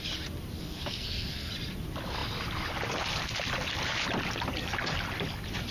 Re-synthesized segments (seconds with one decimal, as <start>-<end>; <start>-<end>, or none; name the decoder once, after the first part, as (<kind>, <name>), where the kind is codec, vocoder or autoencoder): 0.6-1.5 (codec, SNAC)